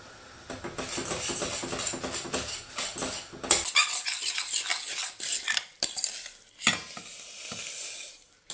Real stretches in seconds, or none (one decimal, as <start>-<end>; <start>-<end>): 0.0-8.5